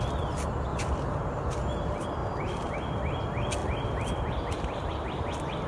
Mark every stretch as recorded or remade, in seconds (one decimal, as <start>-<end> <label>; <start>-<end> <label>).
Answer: 0.0-0.7 recorded; 0.7-1.2 remade; 1.2-2.2 recorded; 2.2-2.7 remade; 2.7-3.6 recorded; 3.6-4.9 remade; 4.9-5.7 recorded